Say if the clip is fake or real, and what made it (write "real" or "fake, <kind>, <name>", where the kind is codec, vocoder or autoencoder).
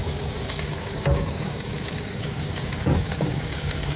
fake, codec, DAC